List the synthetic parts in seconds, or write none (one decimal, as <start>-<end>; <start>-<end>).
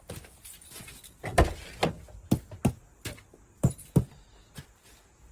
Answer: none